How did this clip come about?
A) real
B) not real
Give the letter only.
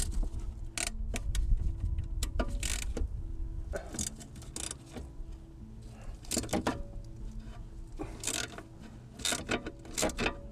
A